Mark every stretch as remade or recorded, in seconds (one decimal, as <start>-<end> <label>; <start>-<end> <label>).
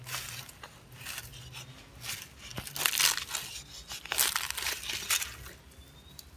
0.0-6.4 recorded